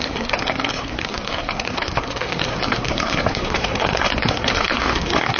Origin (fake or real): fake